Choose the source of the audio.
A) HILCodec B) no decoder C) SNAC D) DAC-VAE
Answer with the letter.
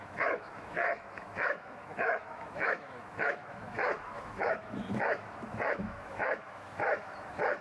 D